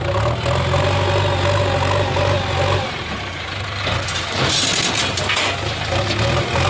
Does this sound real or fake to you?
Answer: real